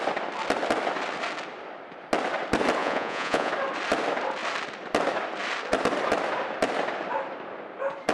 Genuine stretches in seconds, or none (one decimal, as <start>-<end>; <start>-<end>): 0.0-2.8; 3.5-8.1